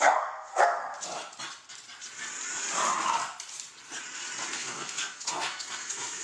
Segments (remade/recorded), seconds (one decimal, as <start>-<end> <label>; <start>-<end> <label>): 0.0-0.8 remade; 0.8-4.5 recorded; 4.5-6.2 remade